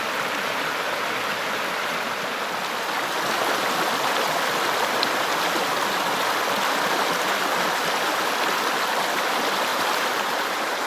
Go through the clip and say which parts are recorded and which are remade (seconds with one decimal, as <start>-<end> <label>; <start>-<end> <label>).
0.0-9.7 recorded; 9.7-10.9 remade